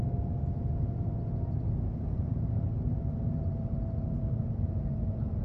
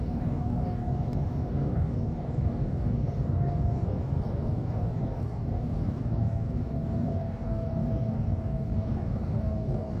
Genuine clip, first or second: first